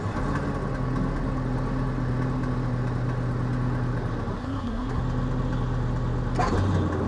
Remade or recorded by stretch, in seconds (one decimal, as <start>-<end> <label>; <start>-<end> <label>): 0.0-4.4 recorded; 4.4-5.0 remade; 5.0-7.1 recorded